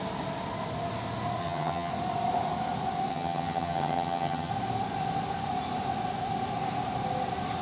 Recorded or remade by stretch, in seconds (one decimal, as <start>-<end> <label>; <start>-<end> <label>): 0.0-1.4 recorded; 1.4-1.9 remade; 1.9-3.1 recorded; 3.1-4.5 remade; 4.5-7.6 recorded